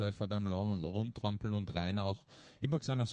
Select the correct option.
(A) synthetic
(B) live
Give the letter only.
A